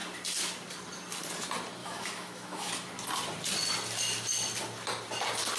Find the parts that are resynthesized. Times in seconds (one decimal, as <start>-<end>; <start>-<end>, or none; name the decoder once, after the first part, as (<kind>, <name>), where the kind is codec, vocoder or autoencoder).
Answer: 1.8-2.7 (autoencoder, DAC-VAE)